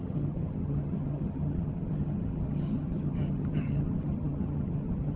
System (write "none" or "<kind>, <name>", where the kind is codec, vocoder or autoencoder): vocoder, HiFi-GAN